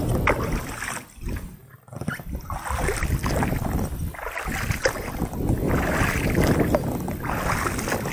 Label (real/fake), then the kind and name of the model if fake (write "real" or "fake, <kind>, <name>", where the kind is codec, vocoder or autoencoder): real